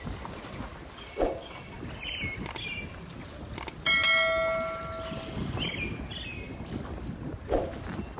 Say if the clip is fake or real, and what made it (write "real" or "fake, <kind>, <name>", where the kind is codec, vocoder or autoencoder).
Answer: real